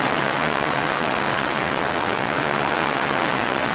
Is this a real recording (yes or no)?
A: no